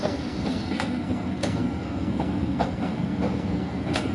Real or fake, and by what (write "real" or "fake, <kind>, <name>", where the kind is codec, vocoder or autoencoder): fake, codec, SNAC